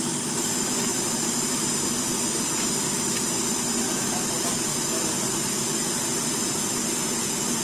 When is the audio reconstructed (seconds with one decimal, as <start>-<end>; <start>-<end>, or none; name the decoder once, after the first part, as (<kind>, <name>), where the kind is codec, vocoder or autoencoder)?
0.9-2.0 (vocoder, BigVGAN v2)

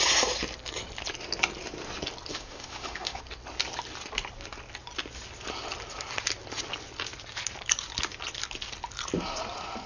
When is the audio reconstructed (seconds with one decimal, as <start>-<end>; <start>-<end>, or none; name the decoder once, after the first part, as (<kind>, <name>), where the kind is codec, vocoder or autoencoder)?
2.3-3.2 (autoencoder, DAC-VAE)

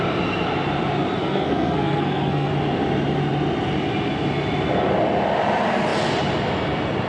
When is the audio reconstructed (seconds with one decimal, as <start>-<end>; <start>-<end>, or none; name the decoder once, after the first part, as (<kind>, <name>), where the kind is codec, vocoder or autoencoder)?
1.2-2.5 (codec, SNAC)

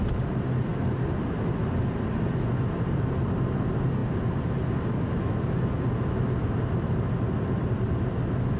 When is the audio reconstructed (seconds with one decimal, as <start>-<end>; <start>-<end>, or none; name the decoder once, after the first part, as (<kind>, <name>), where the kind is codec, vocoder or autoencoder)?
none

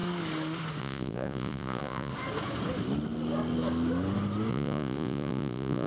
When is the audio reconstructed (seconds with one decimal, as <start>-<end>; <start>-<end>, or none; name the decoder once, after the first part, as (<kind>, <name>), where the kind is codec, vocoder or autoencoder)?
0.8-2.1 (vocoder, Vocos); 4.5-5.9

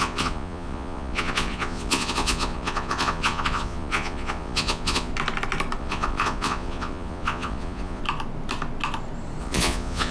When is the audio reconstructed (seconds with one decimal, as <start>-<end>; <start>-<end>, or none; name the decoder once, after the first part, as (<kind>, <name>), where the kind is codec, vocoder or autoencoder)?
0.0-5.1 (vocoder, Vocos); 5.8-8.0; 9.4-10.1

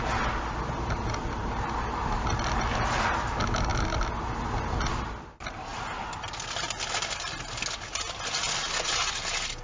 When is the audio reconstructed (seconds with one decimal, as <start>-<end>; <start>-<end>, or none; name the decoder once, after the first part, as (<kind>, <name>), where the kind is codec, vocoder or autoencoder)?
none